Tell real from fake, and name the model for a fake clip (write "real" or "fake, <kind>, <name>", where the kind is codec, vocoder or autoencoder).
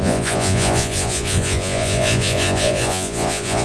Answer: fake, vocoder, Vocos